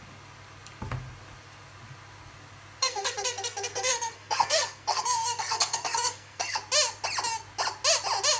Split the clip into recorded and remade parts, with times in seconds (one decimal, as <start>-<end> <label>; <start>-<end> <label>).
0.0-2.8 recorded; 2.8-6.6 remade; 6.6-8.4 recorded